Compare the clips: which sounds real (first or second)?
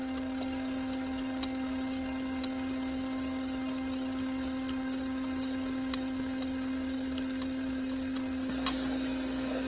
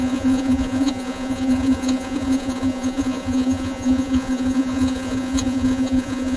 first